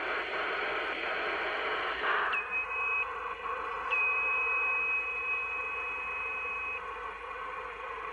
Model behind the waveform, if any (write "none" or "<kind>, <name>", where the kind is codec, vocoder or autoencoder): none